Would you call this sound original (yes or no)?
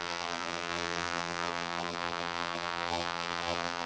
no